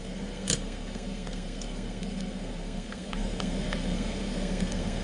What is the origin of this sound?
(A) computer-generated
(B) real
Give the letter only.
A